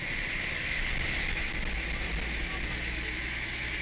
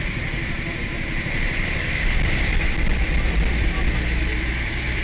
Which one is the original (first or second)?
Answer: first